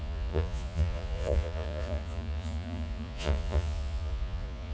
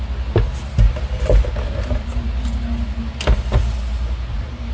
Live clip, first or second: second